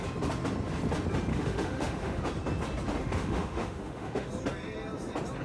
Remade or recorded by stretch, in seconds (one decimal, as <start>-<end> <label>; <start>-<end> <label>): 0.0-1.3 recorded; 1.3-2.2 remade; 2.2-3.0 recorded; 3.0-4.3 remade; 4.3-5.4 recorded